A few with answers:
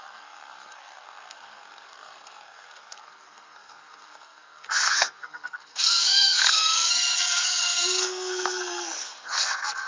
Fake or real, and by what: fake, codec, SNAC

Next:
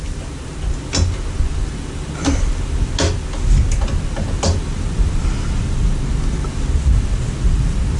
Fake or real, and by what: real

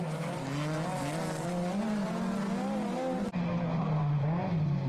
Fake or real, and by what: real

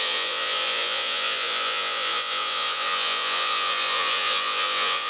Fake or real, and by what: fake, vocoder, Vocos